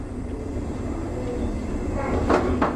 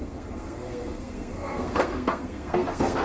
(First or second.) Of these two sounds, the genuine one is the first